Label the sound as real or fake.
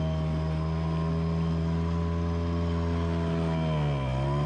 real